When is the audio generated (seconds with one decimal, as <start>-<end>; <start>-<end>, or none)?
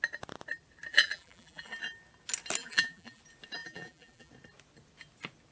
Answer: 0.9-1.7; 2.6-3.2; 3.6-4.3